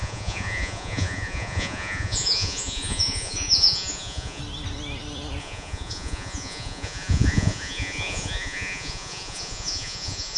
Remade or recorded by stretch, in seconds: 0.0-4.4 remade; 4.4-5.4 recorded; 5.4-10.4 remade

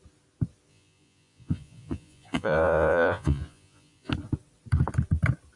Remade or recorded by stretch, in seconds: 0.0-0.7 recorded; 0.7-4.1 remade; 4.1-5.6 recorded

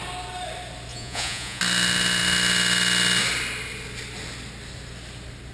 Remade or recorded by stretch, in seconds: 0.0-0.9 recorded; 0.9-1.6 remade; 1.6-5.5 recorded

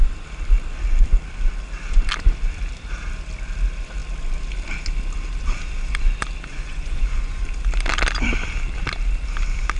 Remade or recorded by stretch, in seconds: 0.0-6.5 recorded; 6.5-7.4 remade; 7.4-9.8 recorded

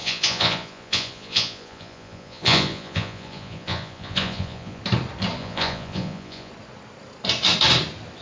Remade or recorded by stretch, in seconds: 0.0-4.8 remade; 4.8-5.4 recorded; 5.4-6.5 remade; 6.5-8.2 recorded

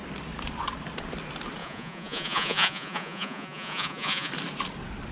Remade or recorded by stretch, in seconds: 0.0-1.6 recorded; 1.6-4.3 remade; 4.3-5.1 recorded

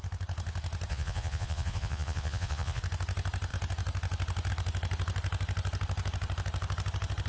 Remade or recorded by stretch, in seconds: 0.0-0.9 recorded; 0.9-2.8 remade; 2.8-7.3 recorded